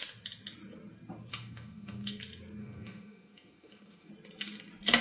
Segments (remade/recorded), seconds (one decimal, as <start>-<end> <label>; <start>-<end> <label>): 0.0-1.3 recorded; 1.3-2.2 remade; 2.2-2.6 recorded; 2.6-4.1 remade; 4.1-5.0 recorded